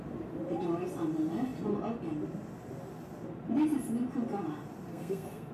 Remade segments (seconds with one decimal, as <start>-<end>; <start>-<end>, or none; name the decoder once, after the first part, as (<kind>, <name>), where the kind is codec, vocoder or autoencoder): 4.9-5.5 (codec, SNAC)